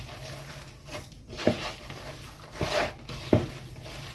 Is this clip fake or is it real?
real